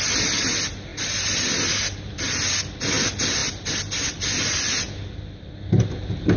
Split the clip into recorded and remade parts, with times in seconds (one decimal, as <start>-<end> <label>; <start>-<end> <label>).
0.0-6.4 recorded